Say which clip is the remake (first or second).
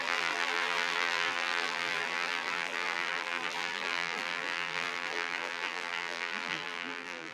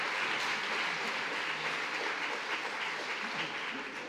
first